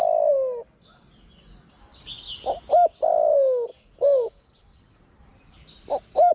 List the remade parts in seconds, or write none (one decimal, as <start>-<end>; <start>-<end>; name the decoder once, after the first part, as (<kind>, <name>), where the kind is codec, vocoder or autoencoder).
3.7-4.6 (vocoder, Vocos)